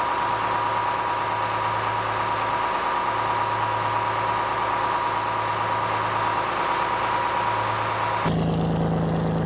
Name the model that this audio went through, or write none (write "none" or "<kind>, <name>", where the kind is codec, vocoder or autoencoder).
none